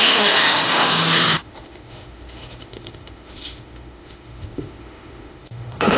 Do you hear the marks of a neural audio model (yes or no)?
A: yes